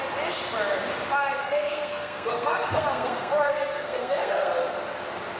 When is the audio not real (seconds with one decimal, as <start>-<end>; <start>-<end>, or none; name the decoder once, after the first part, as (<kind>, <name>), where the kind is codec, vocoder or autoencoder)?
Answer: 1.4-4.5 (codec, SNAC)